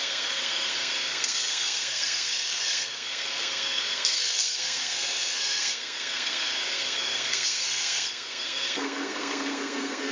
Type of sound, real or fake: fake